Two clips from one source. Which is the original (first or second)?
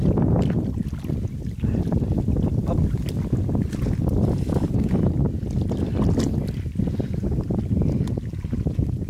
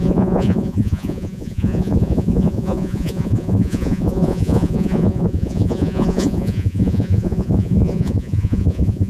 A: first